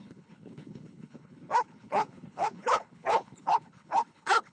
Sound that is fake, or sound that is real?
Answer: fake